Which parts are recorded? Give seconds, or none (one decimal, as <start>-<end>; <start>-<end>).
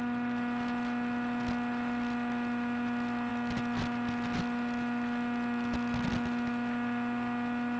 0.0-7.8